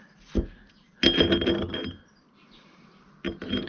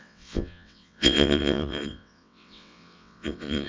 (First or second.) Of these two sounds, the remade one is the second